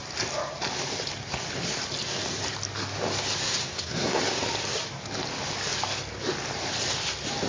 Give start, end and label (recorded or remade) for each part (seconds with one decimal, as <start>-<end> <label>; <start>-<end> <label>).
0.0-3.6 recorded; 3.6-4.2 remade; 4.2-7.5 recorded